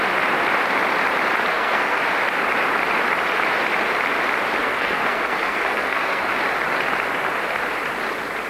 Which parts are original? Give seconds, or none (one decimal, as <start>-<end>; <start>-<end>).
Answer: 0.0-1.5; 2.0-4.6; 6.3-8.5